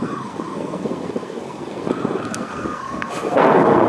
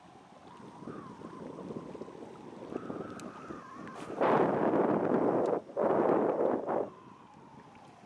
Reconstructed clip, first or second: first